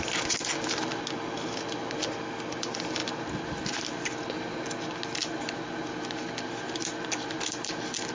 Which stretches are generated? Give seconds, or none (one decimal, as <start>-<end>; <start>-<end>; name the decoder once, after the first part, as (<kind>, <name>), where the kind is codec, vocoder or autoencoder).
none